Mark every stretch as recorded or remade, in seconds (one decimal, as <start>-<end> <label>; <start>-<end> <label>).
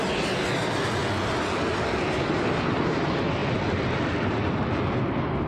0.0-5.5 recorded